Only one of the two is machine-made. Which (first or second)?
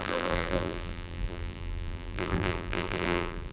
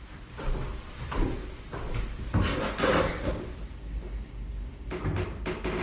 first